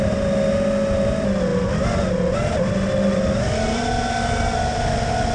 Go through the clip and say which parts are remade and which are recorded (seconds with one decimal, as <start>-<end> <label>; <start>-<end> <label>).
0.0-5.3 recorded